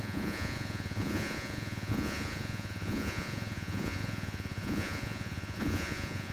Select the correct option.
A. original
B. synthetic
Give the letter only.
B